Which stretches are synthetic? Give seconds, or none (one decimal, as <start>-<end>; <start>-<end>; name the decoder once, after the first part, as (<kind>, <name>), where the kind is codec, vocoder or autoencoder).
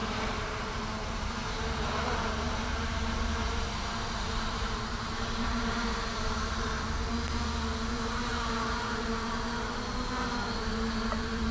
0.0-7.1 (vocoder, BigVGAN v2); 7.9-11.5